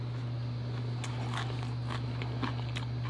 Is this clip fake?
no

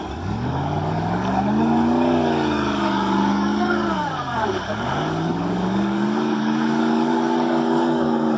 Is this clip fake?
yes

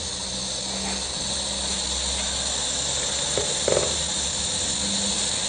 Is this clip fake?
no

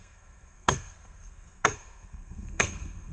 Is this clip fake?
yes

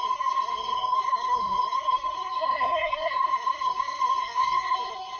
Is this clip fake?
yes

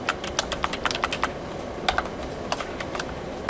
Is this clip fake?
no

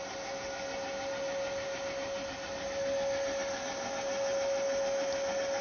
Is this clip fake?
no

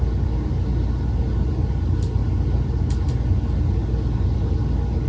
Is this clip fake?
no